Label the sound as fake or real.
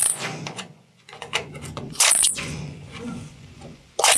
fake